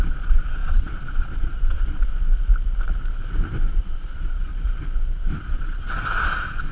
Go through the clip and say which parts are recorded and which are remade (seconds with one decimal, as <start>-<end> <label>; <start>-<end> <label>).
0.0-2.1 remade; 2.1-3.8 recorded; 3.8-4.5 remade; 4.5-5.3 recorded; 5.3-6.7 remade